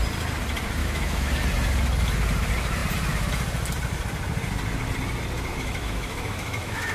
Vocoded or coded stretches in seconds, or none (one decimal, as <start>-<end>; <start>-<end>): 0.8-1.3; 5.5-6.9